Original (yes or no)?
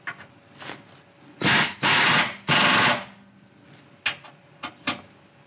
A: yes